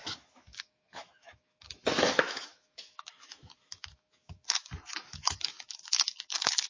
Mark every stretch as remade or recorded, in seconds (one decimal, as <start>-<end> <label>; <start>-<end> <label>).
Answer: 0.0-6.7 remade